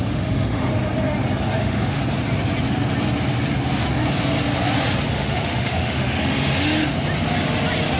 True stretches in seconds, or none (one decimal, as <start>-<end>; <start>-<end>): 0.7-1.6; 2.0-5.1; 6.8-8.0